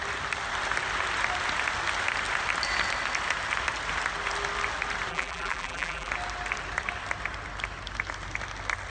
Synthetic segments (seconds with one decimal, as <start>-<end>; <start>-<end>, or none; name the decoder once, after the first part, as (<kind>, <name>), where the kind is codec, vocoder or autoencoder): 5.1-6.1 (vocoder, BigVGAN v2)

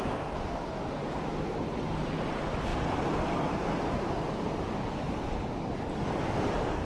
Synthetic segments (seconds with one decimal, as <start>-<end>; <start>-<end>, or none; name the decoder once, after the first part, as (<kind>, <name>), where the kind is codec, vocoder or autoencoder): none

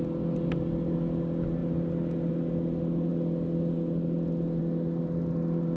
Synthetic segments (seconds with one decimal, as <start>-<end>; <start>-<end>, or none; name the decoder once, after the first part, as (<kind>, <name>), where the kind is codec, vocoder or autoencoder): none

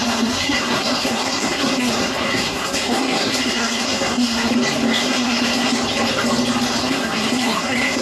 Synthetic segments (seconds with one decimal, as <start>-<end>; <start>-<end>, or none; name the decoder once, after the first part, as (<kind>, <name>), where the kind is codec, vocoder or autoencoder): 0.0-4.5 (codec, SNAC); 5.0-5.7; 6.8-8.0

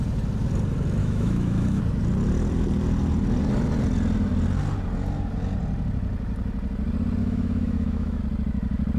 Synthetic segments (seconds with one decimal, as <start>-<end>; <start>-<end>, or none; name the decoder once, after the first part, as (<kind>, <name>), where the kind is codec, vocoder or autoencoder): 1.0-1.8 (autoencoder, DAC-VAE); 7.2-8.2

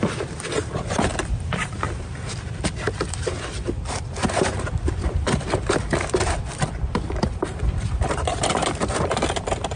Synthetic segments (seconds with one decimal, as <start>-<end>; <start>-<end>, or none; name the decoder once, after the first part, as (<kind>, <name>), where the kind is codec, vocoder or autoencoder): 0.0-9.8 (vocoder, BigVGAN v2)